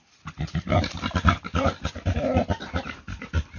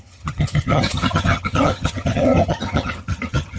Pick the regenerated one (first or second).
second